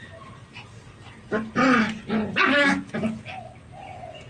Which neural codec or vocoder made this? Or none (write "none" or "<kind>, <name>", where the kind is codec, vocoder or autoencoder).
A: none